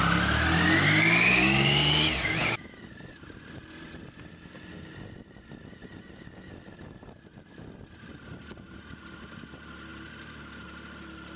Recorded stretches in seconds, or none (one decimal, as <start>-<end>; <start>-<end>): 0.0-11.4